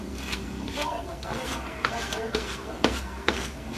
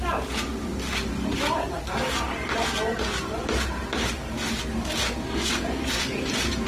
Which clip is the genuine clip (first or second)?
second